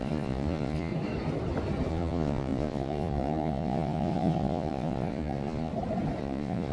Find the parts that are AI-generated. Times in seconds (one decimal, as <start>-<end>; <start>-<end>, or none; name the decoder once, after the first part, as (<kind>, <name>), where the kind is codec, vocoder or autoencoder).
0.0-0.9 (vocoder, Vocos); 1.9-5.7; 6.2-6.7